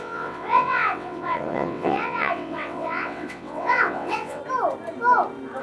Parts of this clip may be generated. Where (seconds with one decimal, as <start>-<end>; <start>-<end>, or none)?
0.0-4.4